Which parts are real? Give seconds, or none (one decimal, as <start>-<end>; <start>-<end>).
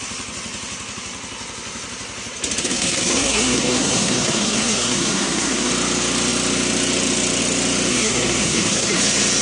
0.0-2.6; 5.7-7.9; 9.0-9.4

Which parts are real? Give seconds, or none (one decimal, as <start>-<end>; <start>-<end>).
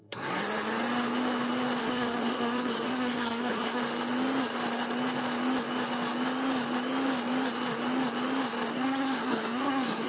0.4-1.8; 3.8-8.7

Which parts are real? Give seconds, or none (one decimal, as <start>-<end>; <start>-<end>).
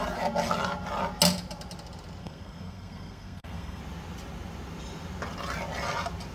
0.0-2.2; 3.8-6.3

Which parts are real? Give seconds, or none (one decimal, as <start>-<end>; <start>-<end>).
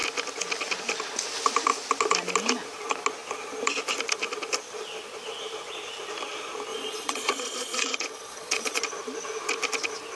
0.0-6.7; 8.8-10.2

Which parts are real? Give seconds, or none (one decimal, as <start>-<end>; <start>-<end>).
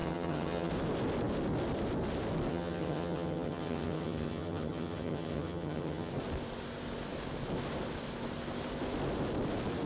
0.7-2.5; 6.1-9.9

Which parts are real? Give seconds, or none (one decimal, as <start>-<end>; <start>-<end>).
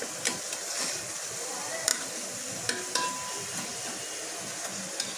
1.9-4.7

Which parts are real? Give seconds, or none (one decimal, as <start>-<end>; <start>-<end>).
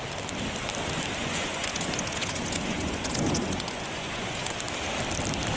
0.0-1.2; 4.6-5.6